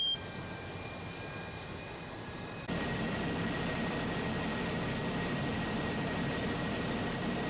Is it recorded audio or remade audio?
remade